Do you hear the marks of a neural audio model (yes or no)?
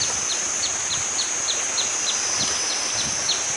no